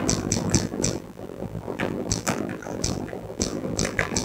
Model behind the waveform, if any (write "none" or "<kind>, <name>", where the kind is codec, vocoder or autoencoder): vocoder, BigVGAN v2